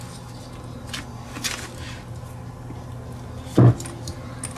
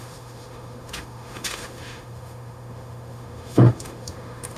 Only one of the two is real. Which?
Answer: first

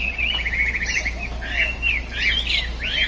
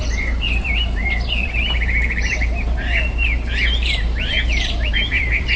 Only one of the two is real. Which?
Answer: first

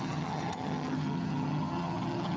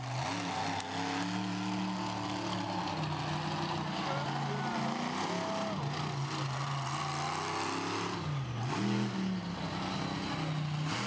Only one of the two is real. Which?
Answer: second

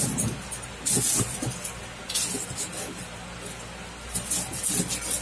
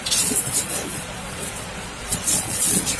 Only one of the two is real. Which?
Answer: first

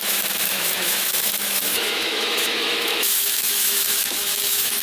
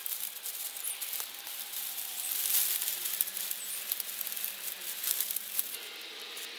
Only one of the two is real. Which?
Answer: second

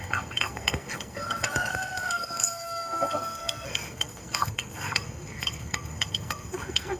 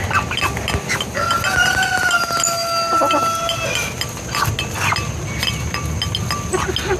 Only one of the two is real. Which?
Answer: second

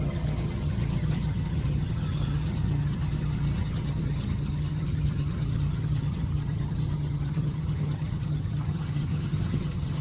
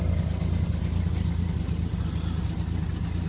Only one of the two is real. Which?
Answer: second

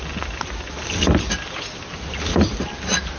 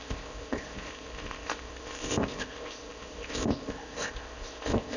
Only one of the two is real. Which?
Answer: first